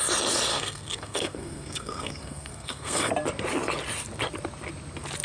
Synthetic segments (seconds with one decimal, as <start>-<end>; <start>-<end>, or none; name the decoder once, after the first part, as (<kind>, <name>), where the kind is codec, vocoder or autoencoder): 0.5-3.1 (codec, SNAC)